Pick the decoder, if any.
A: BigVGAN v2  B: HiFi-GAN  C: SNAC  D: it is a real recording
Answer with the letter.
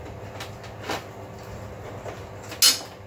D